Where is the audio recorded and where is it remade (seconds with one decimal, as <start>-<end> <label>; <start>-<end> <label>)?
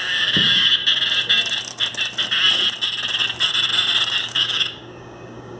0.0-0.8 remade; 0.8-4.2 recorded; 4.2-5.6 remade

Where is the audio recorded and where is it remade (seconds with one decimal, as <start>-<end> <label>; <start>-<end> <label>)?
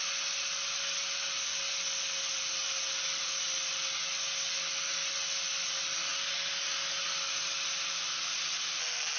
0.0-9.2 recorded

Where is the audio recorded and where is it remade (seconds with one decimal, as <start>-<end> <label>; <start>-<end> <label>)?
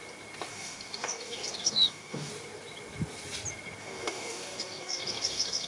0.0-0.5 recorded; 0.5-2.3 remade; 2.3-3.8 recorded; 3.8-5.7 remade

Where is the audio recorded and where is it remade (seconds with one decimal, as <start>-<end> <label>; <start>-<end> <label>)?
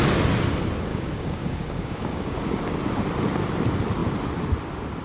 0.0-0.9 recorded; 0.9-2.6 remade; 2.6-5.0 recorded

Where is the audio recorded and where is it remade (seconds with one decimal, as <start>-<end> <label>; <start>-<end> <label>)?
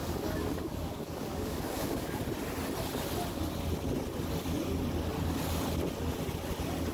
0.0-2.2 remade; 2.2-6.9 recorded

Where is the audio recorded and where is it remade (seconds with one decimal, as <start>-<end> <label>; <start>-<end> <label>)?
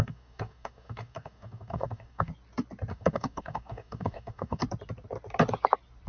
0.0-2.3 remade; 2.3-2.9 recorded; 2.9-4.6 remade; 4.6-6.1 recorded